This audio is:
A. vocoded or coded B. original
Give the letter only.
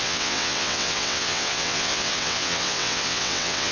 A